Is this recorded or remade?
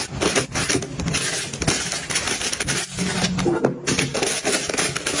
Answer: recorded